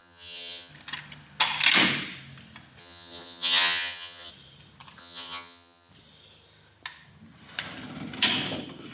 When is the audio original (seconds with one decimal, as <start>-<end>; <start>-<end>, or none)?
0.7-2.8; 4.3-5.0; 5.9-8.9